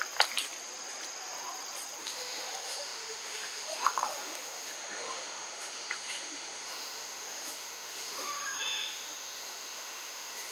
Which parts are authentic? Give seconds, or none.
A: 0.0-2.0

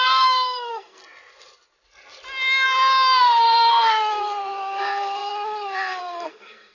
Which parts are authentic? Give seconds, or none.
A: 1.0-3.2